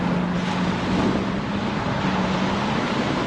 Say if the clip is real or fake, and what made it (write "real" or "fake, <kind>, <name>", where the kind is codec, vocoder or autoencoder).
real